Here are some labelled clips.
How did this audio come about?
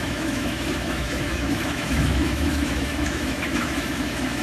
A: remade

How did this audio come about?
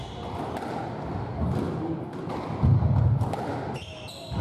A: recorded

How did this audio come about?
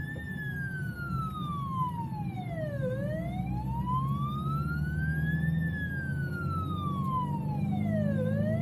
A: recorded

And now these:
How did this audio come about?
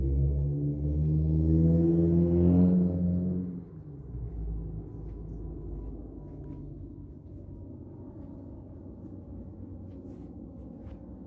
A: recorded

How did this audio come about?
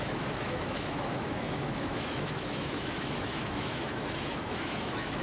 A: remade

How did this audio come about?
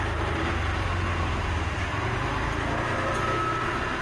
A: recorded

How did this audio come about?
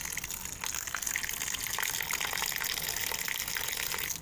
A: recorded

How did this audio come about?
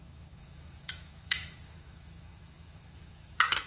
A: remade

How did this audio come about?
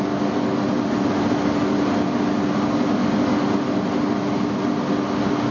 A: recorded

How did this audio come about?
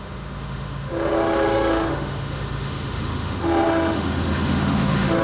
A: remade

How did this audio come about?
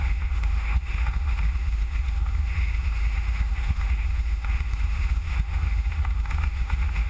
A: remade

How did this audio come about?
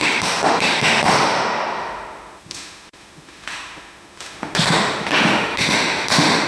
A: remade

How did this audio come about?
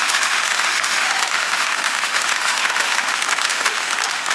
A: remade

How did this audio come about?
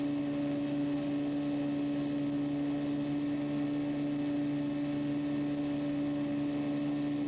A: recorded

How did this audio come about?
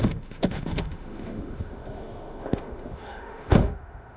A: remade